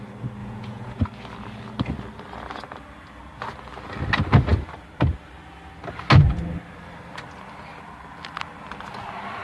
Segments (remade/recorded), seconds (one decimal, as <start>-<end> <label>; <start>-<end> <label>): 0.0-0.4 recorded; 0.4-1.0 remade; 1.0-9.4 recorded